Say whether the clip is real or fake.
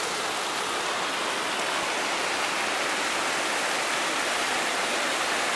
real